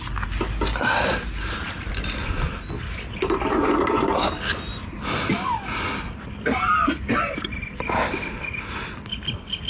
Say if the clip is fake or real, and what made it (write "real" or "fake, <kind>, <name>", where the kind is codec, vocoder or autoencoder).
real